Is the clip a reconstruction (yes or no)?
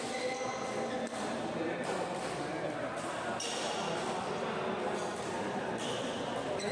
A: no